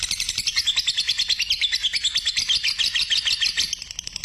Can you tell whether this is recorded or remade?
recorded